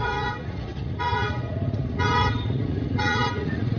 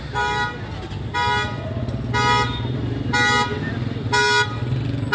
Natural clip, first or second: second